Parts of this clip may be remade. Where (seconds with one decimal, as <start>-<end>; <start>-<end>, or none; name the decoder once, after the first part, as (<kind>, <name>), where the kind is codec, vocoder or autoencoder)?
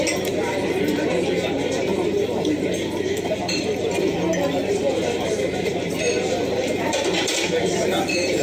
none